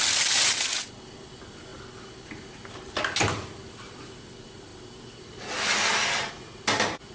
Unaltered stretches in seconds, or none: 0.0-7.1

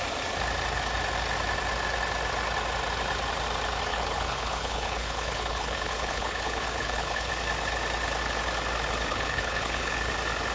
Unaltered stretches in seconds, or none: 0.0-3.9; 7.3-9.1; 10.1-10.5